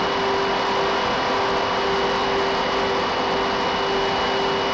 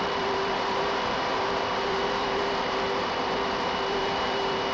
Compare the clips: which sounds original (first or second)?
first